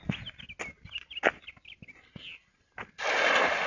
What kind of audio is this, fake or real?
real